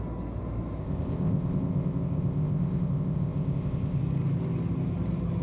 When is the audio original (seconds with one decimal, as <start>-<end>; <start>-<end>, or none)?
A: 0.0-0.8; 4.0-5.4